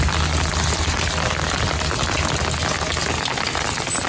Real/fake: real